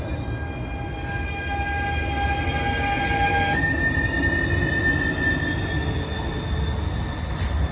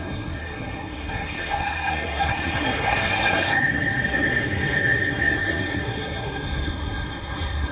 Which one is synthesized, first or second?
second